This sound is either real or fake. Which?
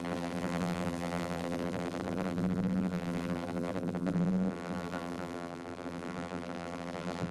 fake